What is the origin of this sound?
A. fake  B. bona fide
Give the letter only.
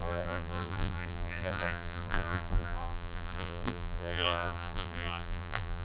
A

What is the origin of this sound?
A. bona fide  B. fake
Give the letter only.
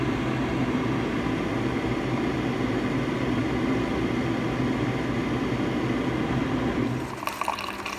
A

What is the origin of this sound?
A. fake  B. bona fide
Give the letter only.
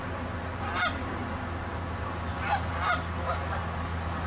B